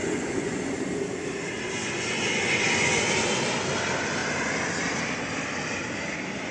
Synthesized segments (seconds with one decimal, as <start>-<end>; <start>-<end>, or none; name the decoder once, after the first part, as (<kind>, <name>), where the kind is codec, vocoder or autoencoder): 0.0-0.8 (vocoder, Vocos); 1.8-3.1